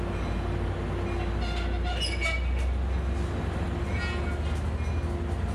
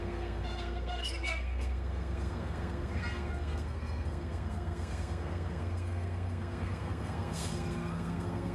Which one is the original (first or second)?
first